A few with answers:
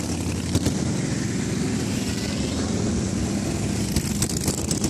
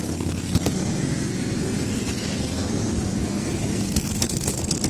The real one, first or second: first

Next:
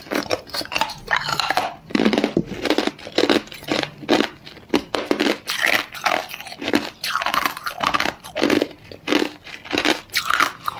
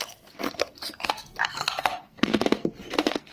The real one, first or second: first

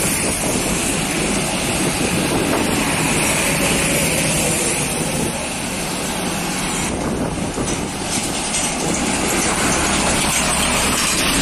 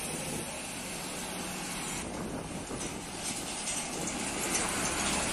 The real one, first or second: second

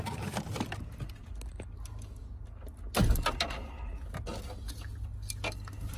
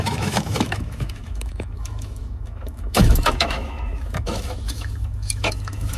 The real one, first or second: first